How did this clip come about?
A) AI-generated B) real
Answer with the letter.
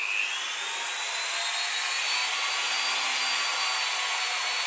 B